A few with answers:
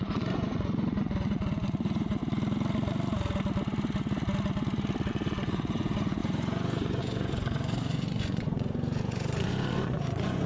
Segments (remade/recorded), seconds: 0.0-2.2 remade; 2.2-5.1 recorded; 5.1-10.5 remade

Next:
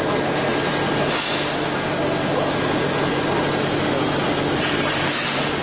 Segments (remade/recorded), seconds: 0.0-5.6 recorded